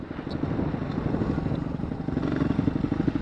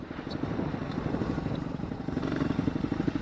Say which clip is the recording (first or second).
first